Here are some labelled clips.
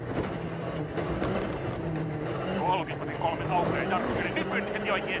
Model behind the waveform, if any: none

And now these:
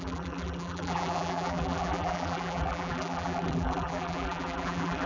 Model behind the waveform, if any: vocoder, BigVGAN v2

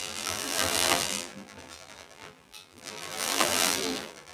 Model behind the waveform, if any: vocoder, BigVGAN v2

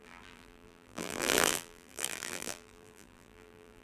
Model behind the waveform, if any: vocoder, BigVGAN v2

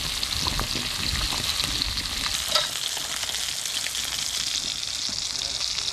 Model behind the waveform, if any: none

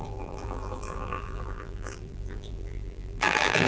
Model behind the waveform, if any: vocoder, BigVGAN v2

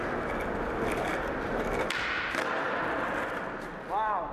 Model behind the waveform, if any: none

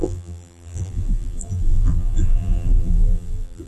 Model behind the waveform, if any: vocoder, BigVGAN v2